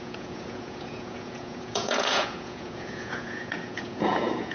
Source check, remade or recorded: remade